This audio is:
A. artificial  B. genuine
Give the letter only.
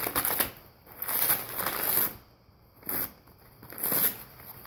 B